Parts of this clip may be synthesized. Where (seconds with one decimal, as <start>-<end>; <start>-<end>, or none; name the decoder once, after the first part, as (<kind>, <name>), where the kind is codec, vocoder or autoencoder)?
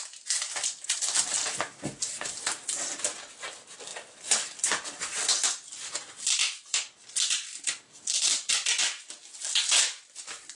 3.9-8.5 (vocoder, BigVGAN v2)